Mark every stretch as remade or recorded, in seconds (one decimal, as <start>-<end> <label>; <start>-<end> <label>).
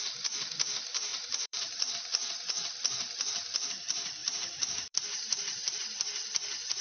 0.0-1.1 recorded; 1.1-1.9 remade; 1.9-4.2 recorded; 4.2-5.8 remade; 5.8-6.8 recorded